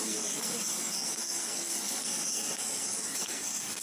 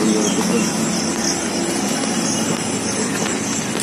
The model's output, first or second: first